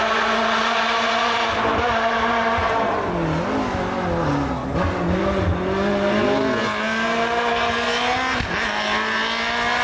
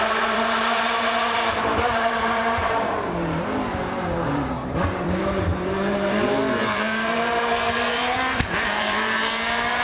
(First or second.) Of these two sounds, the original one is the first